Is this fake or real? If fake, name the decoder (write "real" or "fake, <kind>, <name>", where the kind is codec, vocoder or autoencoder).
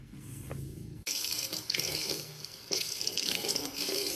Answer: fake, codec, SNAC